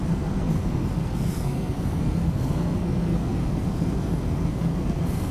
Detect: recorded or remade remade